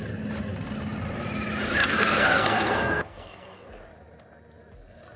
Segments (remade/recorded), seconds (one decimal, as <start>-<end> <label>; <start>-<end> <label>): 0.0-1.8 recorded; 1.8-3.7 remade; 3.7-5.2 recorded